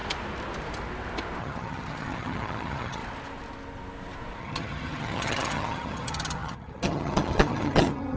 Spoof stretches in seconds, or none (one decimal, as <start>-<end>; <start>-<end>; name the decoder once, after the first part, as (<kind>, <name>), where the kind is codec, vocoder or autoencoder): 1.4-3.0 (vocoder, HiFi-GAN); 4.4-8.2